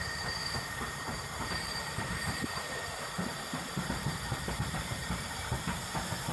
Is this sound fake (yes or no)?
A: yes